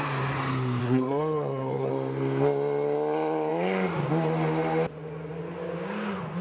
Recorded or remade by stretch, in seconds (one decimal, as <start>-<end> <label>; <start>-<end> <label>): 0.0-0.8 recorded; 0.8-1.9 remade; 1.9-6.4 recorded